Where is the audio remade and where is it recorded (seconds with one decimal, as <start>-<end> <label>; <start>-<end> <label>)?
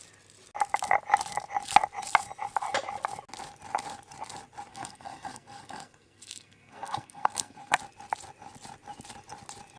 0.0-4.7 recorded; 4.7-7.8 remade; 7.8-9.8 recorded